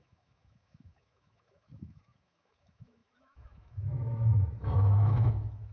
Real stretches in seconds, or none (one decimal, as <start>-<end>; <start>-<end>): none